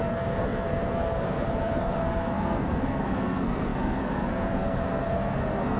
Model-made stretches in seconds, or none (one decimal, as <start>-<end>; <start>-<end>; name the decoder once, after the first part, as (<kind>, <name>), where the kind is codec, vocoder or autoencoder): 0.0-5.8 (codec, SNAC)